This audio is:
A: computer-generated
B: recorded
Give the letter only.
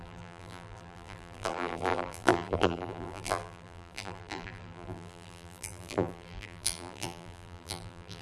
A